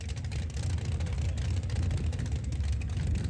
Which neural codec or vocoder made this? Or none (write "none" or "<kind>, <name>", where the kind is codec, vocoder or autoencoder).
none